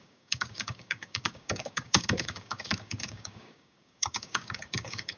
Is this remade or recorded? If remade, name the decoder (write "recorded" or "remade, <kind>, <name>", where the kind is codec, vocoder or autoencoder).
remade, codec, DAC